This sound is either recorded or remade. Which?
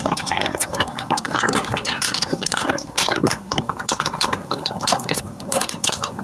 remade